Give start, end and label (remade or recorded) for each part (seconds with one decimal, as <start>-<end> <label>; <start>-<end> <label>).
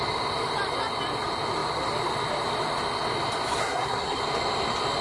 0.0-3.6 recorded; 3.6-4.2 remade; 4.2-5.0 recorded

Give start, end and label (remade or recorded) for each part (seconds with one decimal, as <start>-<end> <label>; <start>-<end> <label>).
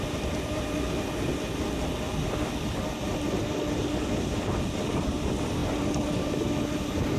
0.0-7.2 recorded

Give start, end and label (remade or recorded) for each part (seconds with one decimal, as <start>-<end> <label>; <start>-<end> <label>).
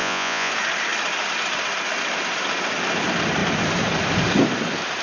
0.0-0.5 remade; 0.5-5.0 recorded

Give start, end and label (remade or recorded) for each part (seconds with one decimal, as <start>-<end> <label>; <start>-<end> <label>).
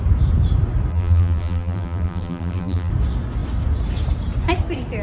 0.0-0.9 recorded; 0.9-2.9 remade; 2.9-5.0 recorded